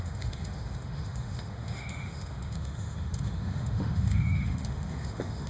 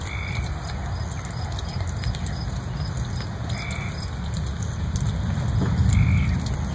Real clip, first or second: second